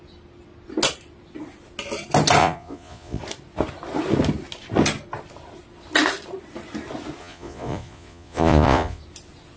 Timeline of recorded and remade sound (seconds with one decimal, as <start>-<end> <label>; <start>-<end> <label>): 0.0-2.4 recorded; 2.4-3.2 remade; 3.2-7.2 recorded; 7.2-9.0 remade; 9.0-9.6 recorded